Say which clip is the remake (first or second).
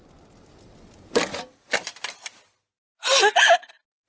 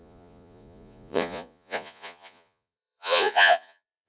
second